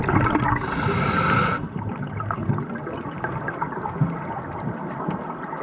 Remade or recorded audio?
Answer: recorded